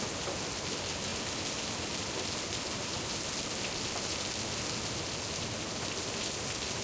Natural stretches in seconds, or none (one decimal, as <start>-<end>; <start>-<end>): 0.0-6.8